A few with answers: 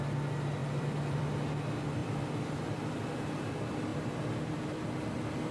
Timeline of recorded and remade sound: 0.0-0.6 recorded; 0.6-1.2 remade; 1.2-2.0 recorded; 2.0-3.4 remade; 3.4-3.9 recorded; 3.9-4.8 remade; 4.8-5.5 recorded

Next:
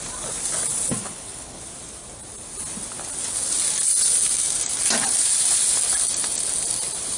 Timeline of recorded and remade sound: 0.0-1.0 recorded; 1.0-1.6 remade; 1.6-7.2 recorded

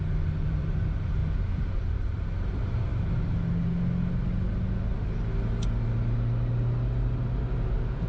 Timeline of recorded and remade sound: 0.0-1.2 remade; 1.2-1.9 recorded; 1.9-2.9 remade; 2.9-8.1 recorded